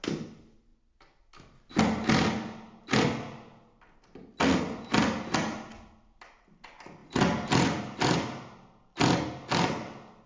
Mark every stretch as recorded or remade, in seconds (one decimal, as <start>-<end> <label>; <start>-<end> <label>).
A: 0.0-10.3 recorded